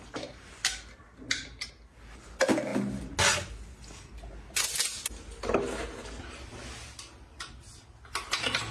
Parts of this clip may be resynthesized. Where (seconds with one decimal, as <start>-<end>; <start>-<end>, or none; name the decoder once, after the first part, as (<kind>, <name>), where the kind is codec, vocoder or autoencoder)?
none